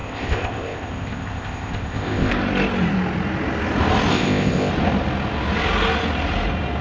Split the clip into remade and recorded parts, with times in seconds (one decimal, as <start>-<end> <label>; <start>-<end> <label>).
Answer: 0.0-2.3 remade; 2.3-4.1 recorded; 4.1-4.7 remade; 4.7-6.8 recorded